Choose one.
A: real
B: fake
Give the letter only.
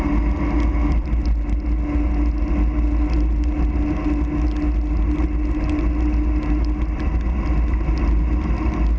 A